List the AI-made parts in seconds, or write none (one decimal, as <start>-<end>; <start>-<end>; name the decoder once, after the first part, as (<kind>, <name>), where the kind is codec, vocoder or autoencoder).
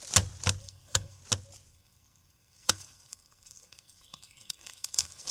0.6-1.2 (codec, SNAC); 1.7-5.3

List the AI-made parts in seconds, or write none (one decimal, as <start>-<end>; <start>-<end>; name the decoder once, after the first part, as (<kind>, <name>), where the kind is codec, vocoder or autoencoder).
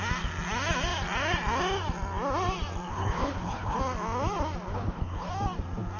2.9-3.8 (codec, HILCodec); 4.7-5.3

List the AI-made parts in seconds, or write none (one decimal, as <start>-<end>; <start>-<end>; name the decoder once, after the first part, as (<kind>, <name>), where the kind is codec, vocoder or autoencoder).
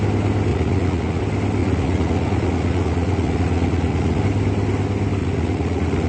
0.5-1.2 (vocoder, Vocos); 1.6-4.2; 5.2-6.1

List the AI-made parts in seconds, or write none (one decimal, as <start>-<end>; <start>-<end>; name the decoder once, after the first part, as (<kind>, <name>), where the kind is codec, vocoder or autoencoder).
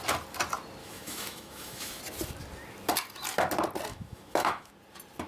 0.8-2.0 (autoencoder, DAC-VAE); 3.9-4.7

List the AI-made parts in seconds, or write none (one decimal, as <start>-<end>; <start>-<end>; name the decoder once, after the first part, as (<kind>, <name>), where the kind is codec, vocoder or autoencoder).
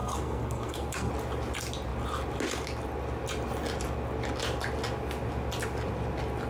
0.0-1.1 (codec, SNAC)